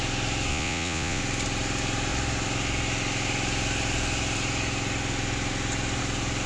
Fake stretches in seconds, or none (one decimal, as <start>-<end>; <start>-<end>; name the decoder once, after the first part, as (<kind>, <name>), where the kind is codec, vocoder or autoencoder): 0.5-1.2 (vocoder, Vocos)